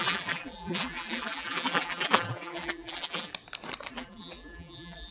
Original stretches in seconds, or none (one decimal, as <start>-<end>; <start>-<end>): 3.3-3.9